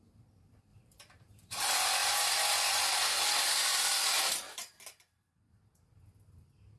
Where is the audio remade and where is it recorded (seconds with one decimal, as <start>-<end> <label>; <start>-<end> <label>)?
0.0-0.7 recorded; 0.7-1.6 remade; 1.6-6.8 recorded